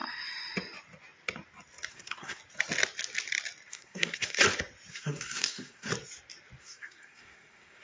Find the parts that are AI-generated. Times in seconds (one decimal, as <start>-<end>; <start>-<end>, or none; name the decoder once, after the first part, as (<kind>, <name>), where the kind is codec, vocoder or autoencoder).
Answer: 1.9-2.4 (codec, SNAC); 3.7-4.4; 4.9-5.9; 6.6-7.8